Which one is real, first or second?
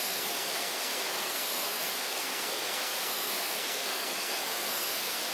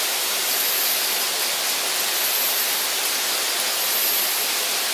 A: second